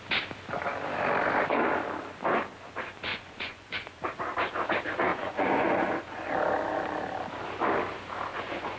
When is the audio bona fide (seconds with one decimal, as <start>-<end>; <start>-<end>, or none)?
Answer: 0.0-3.1; 4.0-5.1; 6.3-8.3